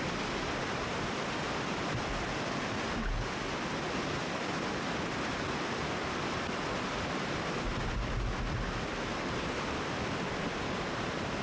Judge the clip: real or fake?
real